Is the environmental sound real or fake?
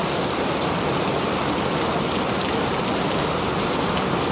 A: real